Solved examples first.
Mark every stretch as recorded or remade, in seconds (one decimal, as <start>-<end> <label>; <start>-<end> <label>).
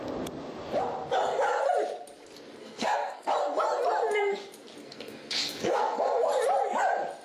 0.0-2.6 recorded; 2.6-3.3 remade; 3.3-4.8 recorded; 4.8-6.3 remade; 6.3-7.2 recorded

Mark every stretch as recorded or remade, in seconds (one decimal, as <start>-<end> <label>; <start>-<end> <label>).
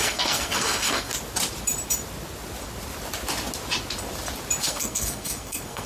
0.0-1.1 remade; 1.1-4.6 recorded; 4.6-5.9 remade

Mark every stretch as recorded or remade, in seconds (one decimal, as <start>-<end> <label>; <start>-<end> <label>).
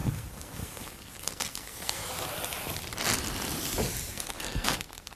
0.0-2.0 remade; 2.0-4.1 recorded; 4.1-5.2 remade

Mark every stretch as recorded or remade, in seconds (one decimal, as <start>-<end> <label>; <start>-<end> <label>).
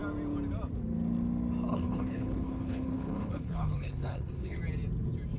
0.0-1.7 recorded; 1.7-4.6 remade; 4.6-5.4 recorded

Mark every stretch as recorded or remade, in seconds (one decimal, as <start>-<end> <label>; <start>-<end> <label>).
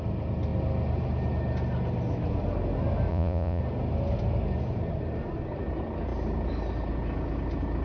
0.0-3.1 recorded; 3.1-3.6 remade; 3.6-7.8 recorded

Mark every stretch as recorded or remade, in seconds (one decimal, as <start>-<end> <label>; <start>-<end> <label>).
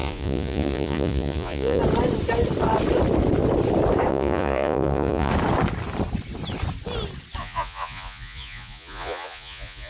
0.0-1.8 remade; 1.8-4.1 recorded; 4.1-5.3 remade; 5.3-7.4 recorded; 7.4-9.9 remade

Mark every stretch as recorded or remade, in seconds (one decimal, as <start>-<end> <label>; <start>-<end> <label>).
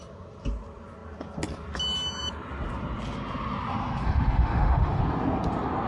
0.0-4.0 recorded; 4.0-5.0 remade; 5.0-5.9 recorded